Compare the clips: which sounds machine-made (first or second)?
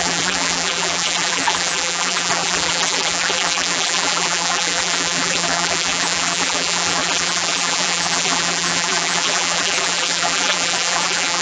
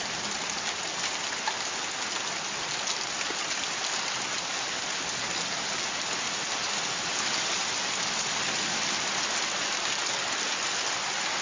first